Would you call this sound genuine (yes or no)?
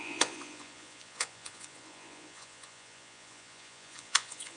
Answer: no